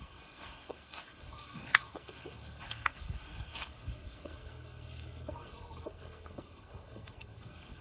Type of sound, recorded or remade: remade